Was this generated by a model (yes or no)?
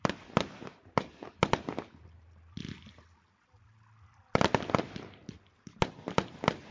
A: no